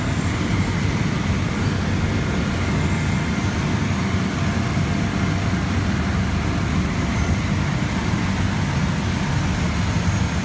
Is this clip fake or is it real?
real